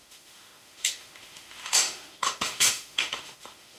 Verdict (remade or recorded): remade